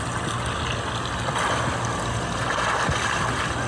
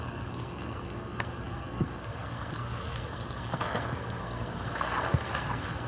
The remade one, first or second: second